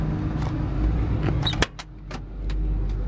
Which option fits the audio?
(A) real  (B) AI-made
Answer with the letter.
A